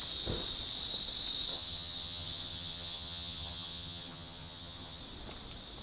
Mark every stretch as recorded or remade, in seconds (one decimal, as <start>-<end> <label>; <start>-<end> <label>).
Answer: 0.0-1.5 recorded; 1.5-5.0 remade; 5.0-5.8 recorded